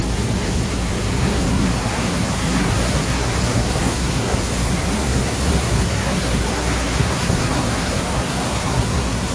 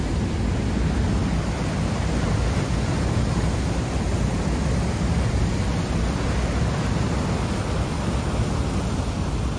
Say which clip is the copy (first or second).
first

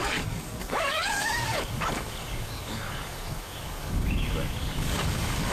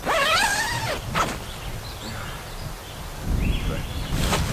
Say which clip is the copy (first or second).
first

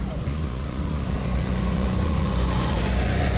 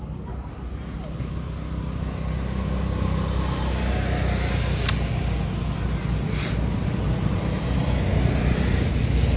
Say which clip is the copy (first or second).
first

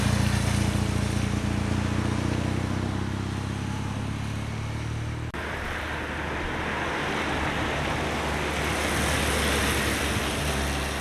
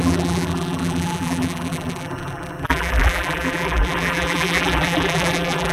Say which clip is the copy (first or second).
second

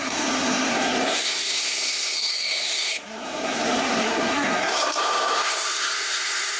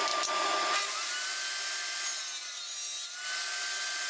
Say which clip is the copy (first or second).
first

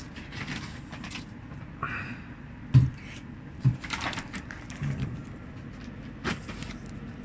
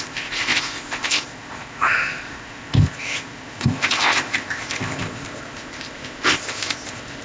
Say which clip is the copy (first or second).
second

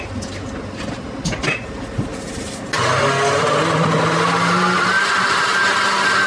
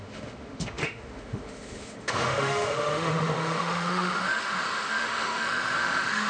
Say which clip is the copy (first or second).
second